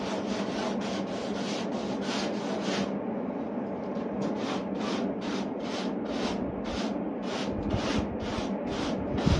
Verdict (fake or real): real